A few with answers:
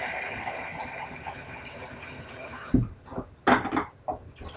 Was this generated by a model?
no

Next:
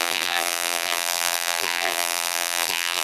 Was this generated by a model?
yes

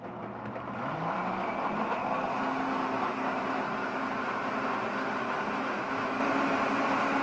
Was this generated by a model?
no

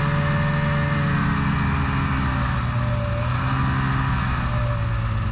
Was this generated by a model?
no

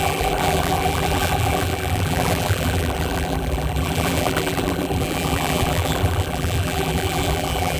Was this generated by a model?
yes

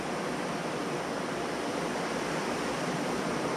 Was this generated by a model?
yes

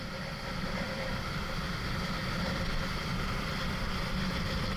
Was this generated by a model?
no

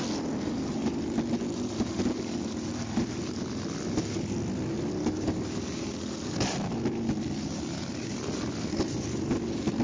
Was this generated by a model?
no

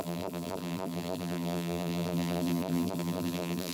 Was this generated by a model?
yes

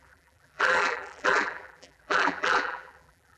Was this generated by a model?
yes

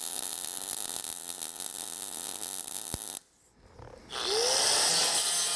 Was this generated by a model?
no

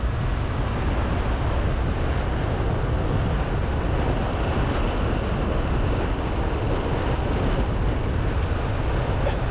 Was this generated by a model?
no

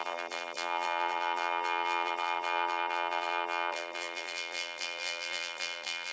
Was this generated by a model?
yes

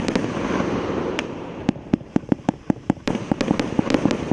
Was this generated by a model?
yes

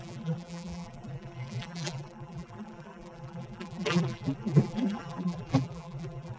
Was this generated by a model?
yes